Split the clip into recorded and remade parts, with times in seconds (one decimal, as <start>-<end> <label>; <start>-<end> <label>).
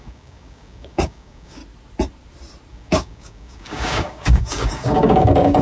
0.0-1.6 remade; 1.6-2.7 recorded; 2.7-5.6 remade